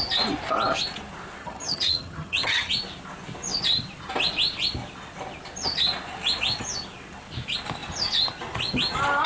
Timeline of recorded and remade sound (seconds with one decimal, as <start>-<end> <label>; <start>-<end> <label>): 0.0-1.4 recorded; 1.4-2.7 remade; 2.7-9.3 recorded